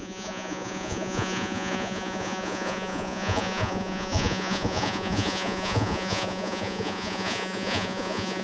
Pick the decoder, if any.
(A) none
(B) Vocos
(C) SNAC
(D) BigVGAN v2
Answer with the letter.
B